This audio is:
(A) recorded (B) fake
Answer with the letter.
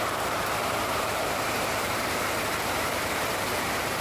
B